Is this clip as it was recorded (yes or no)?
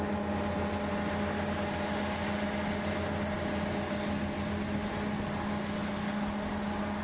yes